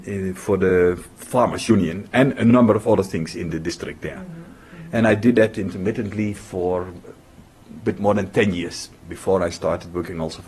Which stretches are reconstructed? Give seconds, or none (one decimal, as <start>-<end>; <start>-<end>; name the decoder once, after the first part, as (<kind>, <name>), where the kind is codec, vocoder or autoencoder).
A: none